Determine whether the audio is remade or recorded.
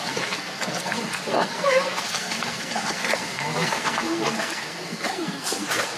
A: remade